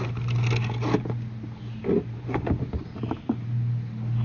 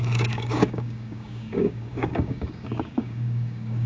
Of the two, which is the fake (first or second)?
second